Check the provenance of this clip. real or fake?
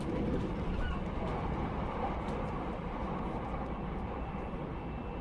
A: real